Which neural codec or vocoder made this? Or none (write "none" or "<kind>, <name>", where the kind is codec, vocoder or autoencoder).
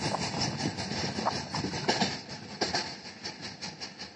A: none